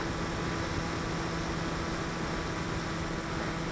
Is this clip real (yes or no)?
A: yes